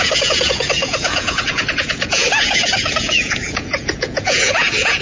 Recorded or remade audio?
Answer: remade